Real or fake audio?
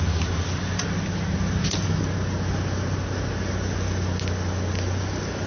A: real